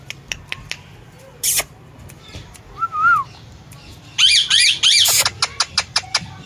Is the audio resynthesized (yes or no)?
no